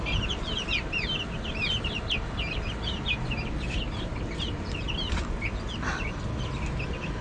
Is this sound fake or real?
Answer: real